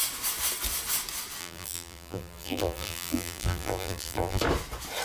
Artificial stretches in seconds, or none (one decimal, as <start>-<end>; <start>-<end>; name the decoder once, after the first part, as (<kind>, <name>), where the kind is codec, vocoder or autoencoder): 1.4-4.4 (vocoder, BigVGAN v2)